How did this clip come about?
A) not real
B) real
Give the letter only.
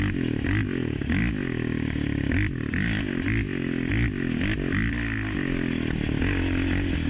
B